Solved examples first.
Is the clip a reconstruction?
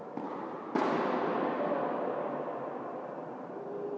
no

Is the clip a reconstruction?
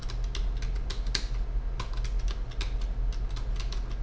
no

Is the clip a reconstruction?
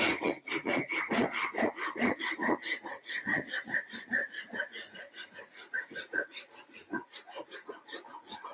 yes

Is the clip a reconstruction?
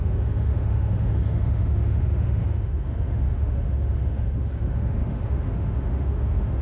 yes